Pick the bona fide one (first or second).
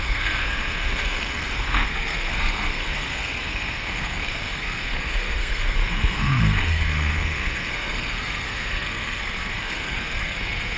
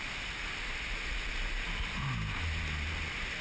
second